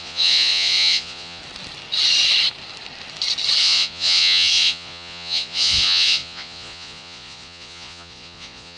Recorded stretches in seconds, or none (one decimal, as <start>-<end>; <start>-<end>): 1.4-3.6